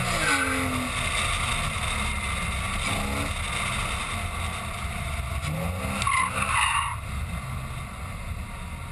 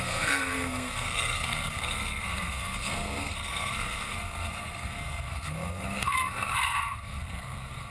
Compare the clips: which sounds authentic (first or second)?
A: first